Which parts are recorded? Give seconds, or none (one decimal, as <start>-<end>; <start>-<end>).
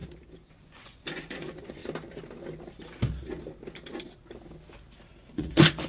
0.0-0.5; 1.8-5.3